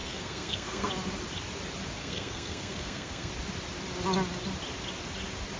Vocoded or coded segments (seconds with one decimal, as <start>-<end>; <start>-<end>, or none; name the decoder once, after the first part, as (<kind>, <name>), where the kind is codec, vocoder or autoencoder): 0.0-0.9 (codec, SNAC); 2.0-3.3